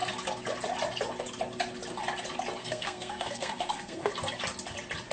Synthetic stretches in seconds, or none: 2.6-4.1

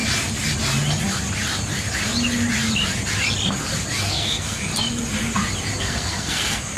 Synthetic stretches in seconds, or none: 4.1-4.7; 5.8-6.8

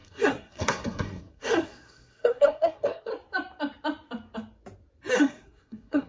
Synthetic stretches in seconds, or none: 0.0-3.1; 5.1-6.1

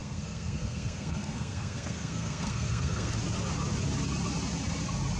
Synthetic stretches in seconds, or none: 0.0-3.1